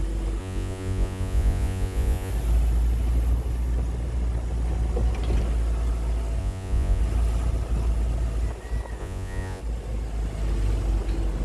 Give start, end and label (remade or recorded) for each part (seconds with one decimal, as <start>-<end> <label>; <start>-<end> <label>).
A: 0.0-0.4 recorded; 0.4-2.3 remade; 2.3-6.4 recorded; 6.4-7.0 remade; 7.0-9.0 recorded; 9.0-9.6 remade; 9.6-11.4 recorded